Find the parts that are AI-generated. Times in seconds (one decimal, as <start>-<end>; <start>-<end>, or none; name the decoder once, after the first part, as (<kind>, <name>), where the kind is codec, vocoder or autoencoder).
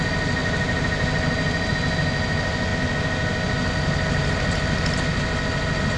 none